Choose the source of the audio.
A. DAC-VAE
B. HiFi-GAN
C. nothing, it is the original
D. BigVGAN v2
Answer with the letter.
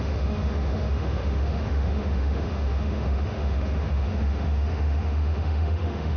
A